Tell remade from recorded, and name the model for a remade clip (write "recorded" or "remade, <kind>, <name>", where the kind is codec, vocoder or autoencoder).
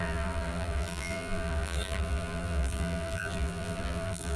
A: remade, vocoder, BigVGAN v2